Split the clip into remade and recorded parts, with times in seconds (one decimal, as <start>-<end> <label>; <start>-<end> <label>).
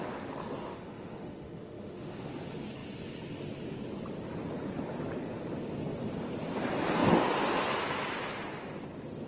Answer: 0.0-0.6 recorded; 0.6-2.3 remade; 2.3-9.3 recorded